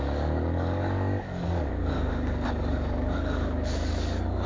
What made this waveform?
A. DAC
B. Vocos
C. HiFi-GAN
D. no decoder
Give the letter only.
A